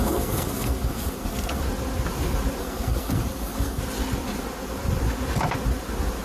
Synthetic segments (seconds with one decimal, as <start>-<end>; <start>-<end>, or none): 0.0-1.6; 2.6-3.8